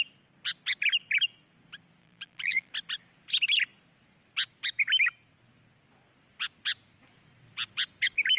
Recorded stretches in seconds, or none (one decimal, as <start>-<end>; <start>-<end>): 0.0-2.0; 2.7-8.4